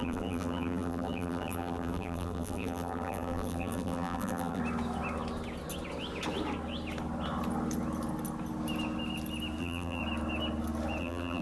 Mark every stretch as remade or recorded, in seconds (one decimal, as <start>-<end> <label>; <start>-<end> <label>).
0.0-4.6 remade; 4.6-9.6 recorded; 9.6-10.0 remade; 10.0-11.0 recorded; 11.0-11.4 remade